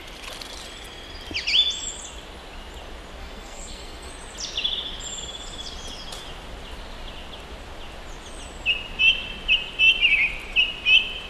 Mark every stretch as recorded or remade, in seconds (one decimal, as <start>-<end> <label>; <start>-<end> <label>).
0.0-3.2 recorded; 3.2-4.1 remade; 4.1-11.3 recorded